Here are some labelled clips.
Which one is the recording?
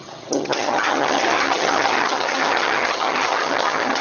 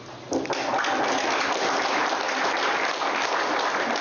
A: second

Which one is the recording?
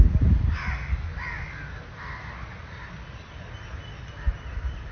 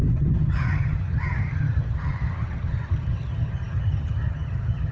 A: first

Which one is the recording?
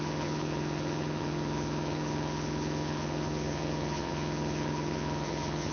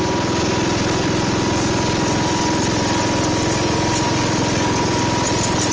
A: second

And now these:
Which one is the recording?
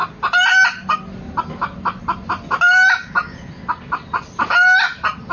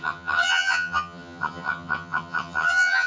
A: first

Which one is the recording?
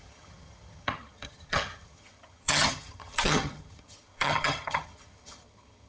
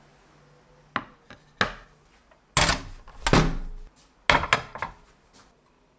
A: second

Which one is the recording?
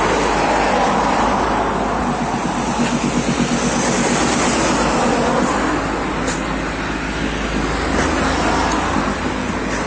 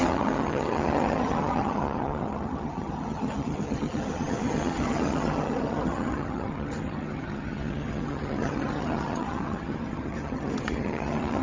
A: first